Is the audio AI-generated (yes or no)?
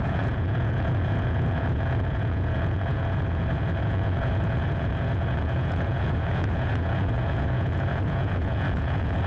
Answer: yes